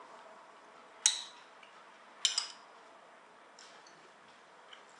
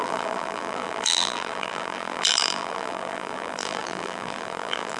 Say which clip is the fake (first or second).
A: second